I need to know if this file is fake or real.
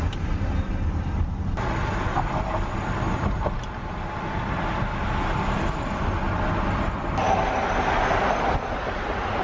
real